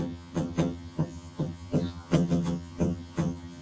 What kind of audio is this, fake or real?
fake